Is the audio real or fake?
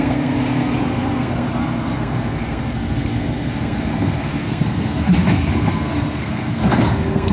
fake